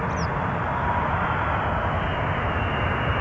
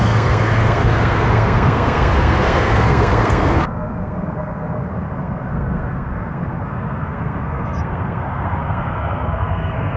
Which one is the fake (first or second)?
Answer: second